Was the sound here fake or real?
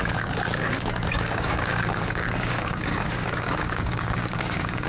fake